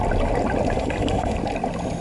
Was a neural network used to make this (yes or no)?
no